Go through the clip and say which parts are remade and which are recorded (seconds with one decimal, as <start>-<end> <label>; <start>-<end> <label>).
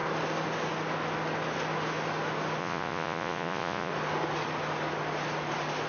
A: 0.0-2.6 recorded; 2.6-3.9 remade; 3.9-5.9 recorded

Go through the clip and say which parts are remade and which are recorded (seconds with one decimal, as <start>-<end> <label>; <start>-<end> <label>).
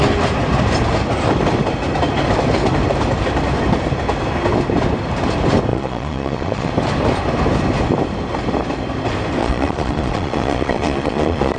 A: 0.0-5.7 recorded; 5.7-6.7 remade; 6.7-9.4 recorded; 9.4-11.6 remade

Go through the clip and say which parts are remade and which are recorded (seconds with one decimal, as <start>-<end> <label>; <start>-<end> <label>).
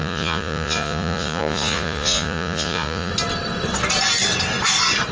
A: 0.0-3.1 remade; 3.1-5.1 recorded